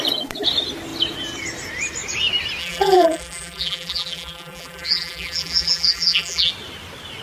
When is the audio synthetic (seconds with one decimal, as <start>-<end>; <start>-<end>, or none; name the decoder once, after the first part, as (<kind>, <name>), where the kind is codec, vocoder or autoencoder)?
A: 2.6-6.5 (vocoder, BigVGAN v2)